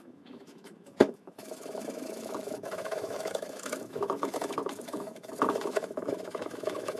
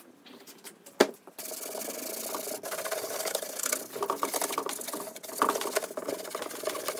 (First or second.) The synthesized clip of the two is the first